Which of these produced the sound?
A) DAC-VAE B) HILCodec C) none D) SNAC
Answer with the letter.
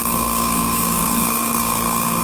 D